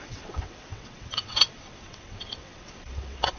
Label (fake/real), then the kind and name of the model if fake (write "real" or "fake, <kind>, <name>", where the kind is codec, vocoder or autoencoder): fake, vocoder, WaveNeXt